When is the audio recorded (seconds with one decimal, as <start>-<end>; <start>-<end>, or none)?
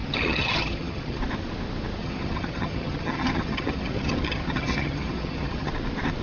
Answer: 1.2-2.0; 5.7-6.2